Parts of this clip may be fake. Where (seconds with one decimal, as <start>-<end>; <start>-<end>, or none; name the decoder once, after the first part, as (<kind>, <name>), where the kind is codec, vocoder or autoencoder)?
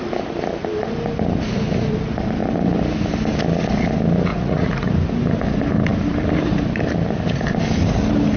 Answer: 4.3-4.9 (vocoder, Vocos)